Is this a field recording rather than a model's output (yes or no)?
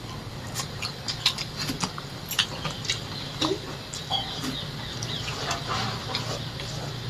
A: yes